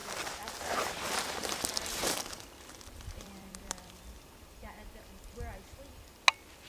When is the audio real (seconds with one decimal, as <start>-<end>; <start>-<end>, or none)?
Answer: 0.0-0.6; 4.6-6.7